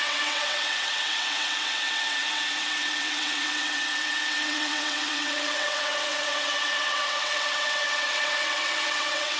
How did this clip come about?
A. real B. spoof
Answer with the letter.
B